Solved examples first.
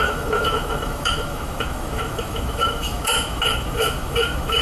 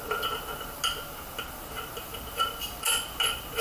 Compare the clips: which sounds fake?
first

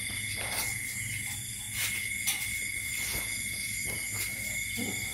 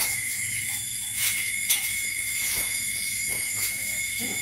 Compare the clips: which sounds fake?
second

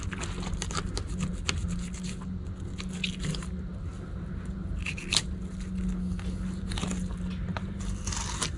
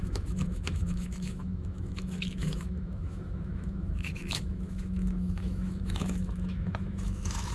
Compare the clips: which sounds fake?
second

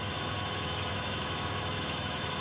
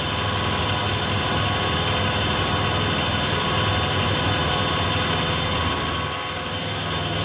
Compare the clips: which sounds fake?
first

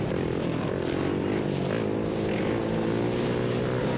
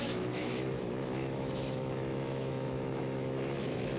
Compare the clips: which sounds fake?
second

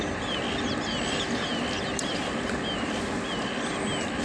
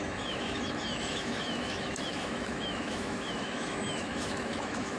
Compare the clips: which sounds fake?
second